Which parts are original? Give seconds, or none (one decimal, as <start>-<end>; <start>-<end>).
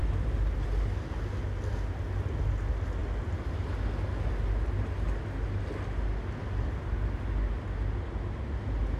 0.0-9.0